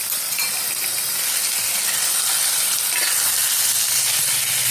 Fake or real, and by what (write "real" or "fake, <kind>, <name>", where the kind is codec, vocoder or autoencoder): real